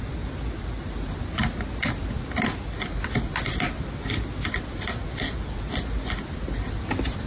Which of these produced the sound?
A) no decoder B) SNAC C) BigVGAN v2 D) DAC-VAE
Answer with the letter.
A